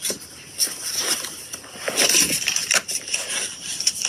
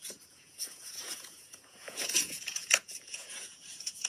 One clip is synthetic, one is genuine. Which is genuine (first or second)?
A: first